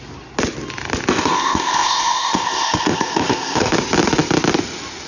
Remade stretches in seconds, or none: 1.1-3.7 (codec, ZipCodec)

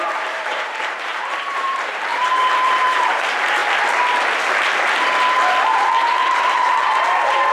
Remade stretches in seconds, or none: 0.0-3.6 (vocoder, BigVGAN v2); 5.6-7.5

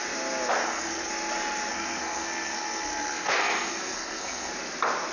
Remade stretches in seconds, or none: 0.6-1.1 (codec, SNAC); 1.7-4.5

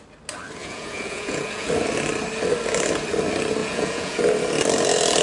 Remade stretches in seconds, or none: 0.6-1.7 (vocoder, Vocos); 3.6-4.2

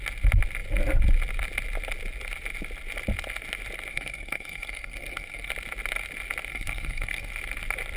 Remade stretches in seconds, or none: 3.9-5.5 (codec, SNAC); 6.5-7.3

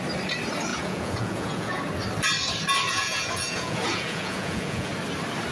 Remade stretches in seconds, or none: 0.7-1.8 (vocoder, Vocos); 2.9-4.9

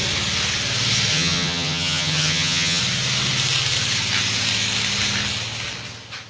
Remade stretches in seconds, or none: 1.1-2.8 (vocoder, HiFi-GAN)

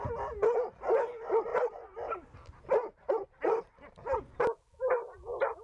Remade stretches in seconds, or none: none